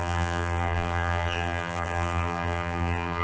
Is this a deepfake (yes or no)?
yes